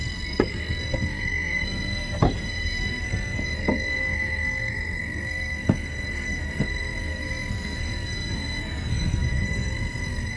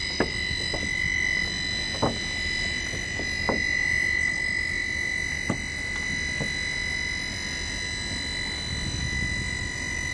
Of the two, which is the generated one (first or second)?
first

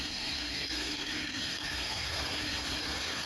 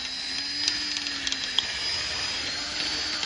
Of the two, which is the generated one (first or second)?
first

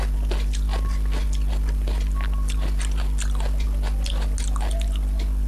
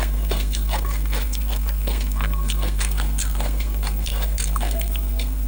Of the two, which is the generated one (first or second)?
second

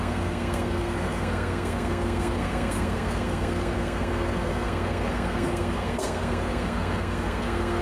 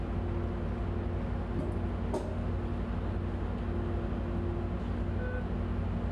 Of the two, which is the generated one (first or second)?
first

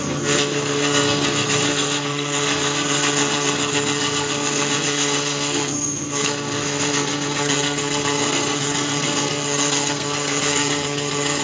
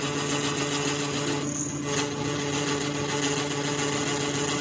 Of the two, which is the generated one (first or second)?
first